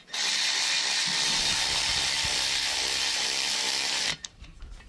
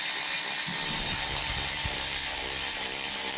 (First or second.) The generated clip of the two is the first